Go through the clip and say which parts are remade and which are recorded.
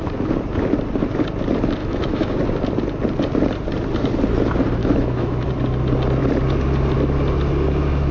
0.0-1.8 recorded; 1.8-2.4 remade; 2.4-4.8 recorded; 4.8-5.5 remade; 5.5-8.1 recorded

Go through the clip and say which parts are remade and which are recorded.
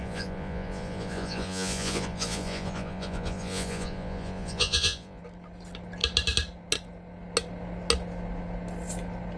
0.0-5.2 remade; 5.2-9.4 recorded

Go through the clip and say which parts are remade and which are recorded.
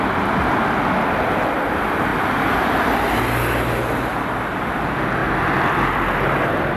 0.0-5.2 recorded; 5.2-6.8 remade